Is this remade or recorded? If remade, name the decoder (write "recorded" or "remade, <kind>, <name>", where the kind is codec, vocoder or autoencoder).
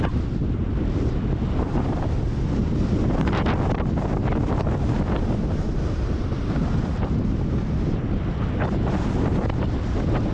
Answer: recorded